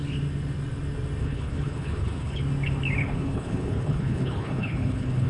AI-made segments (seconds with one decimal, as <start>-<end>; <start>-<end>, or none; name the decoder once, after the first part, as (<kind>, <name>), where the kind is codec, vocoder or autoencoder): 1.2-2.4 (codec, HILCodec); 3.0-5.3